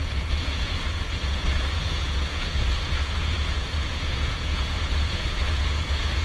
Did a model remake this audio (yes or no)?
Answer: yes